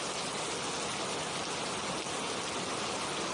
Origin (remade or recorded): recorded